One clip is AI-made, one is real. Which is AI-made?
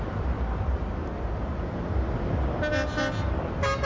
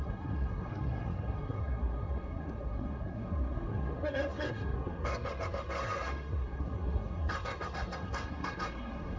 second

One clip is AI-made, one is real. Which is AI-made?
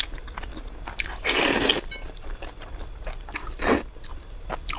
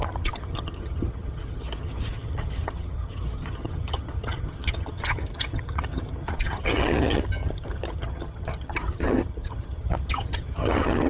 second